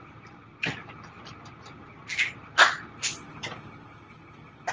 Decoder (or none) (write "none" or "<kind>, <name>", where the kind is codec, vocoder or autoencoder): none